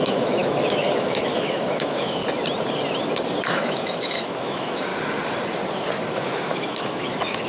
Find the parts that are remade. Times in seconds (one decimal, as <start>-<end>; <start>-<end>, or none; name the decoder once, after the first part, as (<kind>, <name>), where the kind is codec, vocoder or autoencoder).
0.0-2.2 (autoencoder, DAC-VAE); 3.5-4.9; 6.1-7.5